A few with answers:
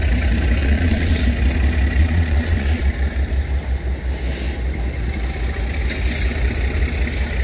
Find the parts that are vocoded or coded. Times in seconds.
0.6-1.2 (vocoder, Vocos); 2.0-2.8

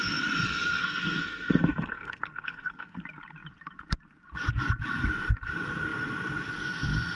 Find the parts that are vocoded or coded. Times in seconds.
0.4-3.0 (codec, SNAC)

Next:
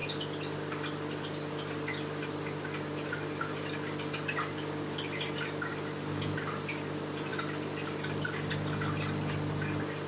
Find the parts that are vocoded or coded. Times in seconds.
none

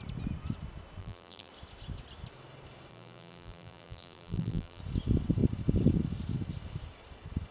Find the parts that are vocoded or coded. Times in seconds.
1.0-1.5 (vocoder, BigVGAN v2); 2.9-4.8